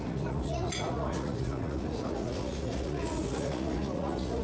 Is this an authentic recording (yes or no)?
no